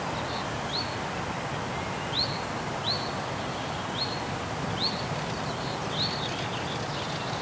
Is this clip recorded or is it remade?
recorded